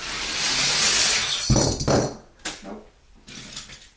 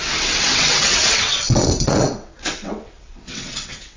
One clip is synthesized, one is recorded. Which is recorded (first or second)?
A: first